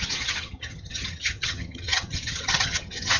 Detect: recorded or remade remade